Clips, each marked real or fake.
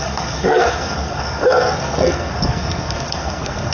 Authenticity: fake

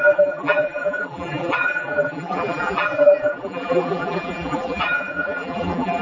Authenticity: fake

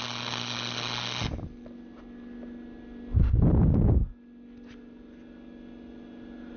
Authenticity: real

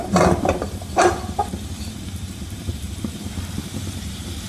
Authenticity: fake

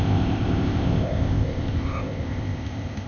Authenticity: fake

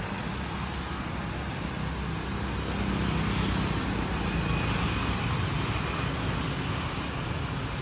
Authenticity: real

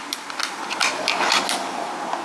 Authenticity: real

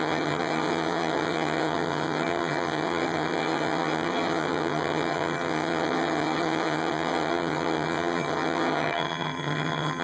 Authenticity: fake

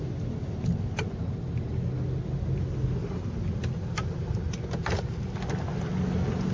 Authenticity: real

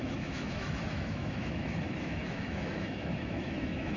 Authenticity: fake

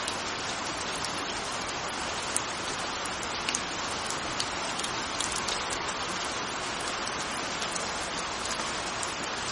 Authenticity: real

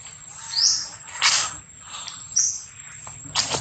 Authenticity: real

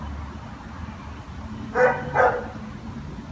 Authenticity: real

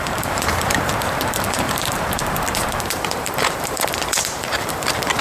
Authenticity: fake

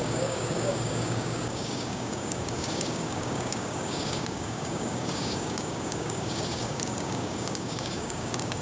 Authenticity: fake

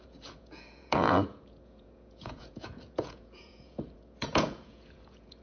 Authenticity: fake